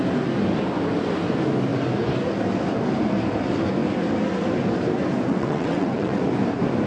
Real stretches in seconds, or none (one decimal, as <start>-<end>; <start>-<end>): 0.0-5.3; 6.2-6.9

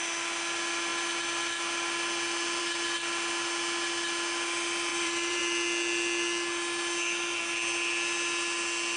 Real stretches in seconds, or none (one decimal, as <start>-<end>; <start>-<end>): 0.0-4.9; 5.4-9.0

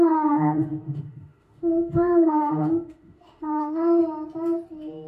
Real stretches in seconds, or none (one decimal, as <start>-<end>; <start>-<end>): 4.0-5.1

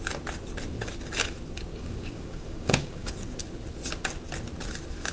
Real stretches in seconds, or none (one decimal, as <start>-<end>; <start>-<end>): 0.0-1.7; 3.1-5.1

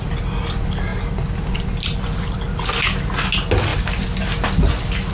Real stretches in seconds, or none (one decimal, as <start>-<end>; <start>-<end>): 0.0-5.1